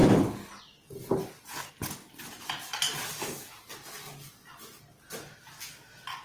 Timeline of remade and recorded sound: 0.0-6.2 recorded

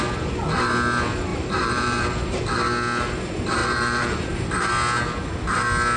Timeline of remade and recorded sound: 0.0-1.3 recorded; 1.3-2.4 remade; 2.4-3.6 recorded; 3.6-4.7 remade; 4.7-6.0 recorded

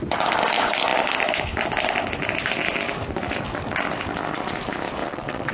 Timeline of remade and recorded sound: 0.0-5.0 recorded; 5.0-5.5 remade

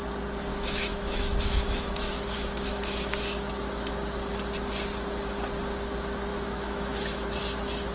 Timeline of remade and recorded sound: 0.0-0.5 recorded; 0.5-3.2 remade; 3.2-6.3 recorded; 6.3-7.3 remade; 7.3-7.9 recorded

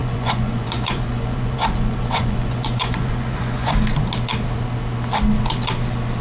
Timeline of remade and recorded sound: 0.0-3.7 remade; 3.7-6.2 recorded

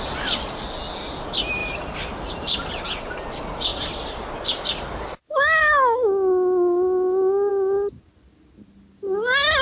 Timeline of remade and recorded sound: 0.0-1.6 recorded; 1.6-2.8 remade; 2.8-9.6 recorded